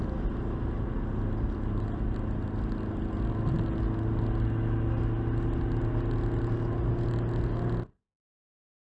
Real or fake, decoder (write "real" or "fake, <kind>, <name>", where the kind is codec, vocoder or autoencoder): real